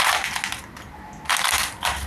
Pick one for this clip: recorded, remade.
recorded